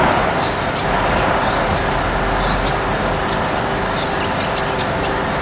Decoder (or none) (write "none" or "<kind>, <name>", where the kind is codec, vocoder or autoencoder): none